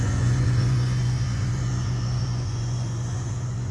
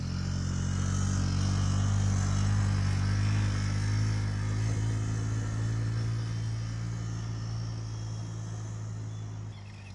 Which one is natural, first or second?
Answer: second